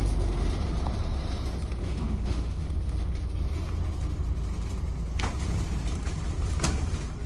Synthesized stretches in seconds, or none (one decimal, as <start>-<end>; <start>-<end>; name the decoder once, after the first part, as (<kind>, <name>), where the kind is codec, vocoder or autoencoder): 1.8-2.7 (autoencoder, DAC-VAE)